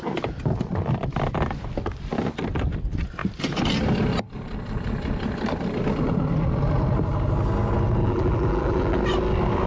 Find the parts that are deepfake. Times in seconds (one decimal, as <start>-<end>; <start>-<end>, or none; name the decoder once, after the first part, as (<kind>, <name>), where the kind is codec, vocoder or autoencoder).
8.0-9.0 (vocoder, BigVGAN v2)